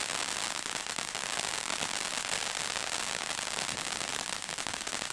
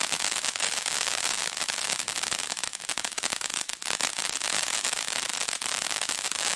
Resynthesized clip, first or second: second